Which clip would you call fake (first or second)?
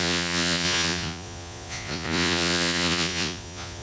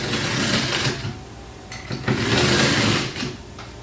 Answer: first